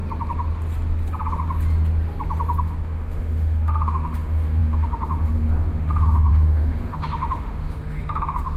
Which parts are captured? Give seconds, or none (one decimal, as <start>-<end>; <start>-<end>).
0.0-2.6